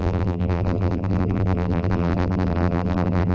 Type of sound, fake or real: fake